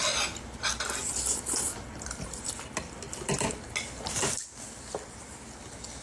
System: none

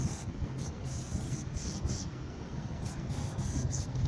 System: codec, SNAC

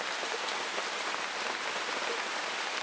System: none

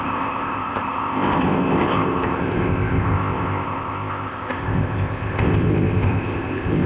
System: codec, ZipCodec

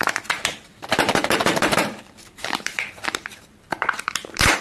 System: vocoder, BigVGAN v2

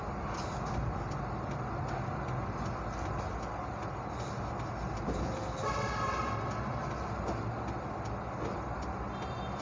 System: none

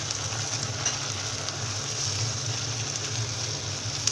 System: none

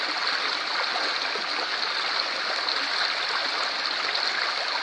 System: none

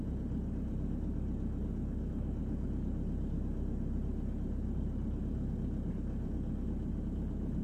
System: none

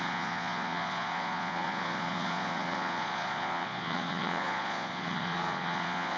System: vocoder, Vocos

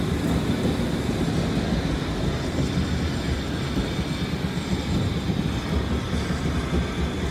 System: none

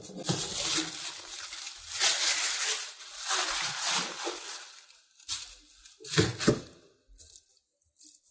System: none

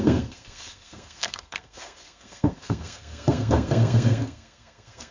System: codec, SNAC